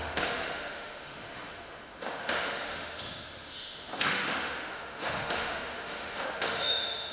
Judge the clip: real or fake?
fake